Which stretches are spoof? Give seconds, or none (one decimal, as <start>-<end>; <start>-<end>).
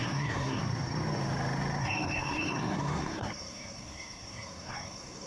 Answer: 0.0-0.6; 1.8-5.3